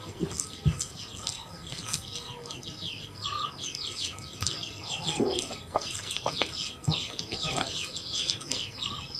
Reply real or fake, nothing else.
fake